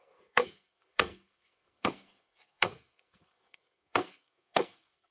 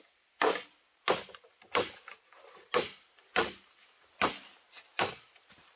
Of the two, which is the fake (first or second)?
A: first